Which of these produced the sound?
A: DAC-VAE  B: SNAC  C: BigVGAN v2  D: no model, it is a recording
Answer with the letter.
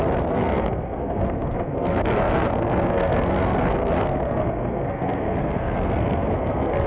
B